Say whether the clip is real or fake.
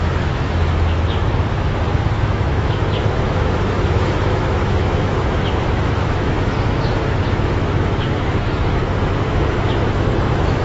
fake